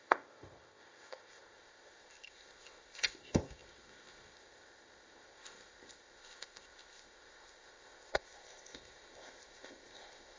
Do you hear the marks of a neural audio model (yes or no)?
yes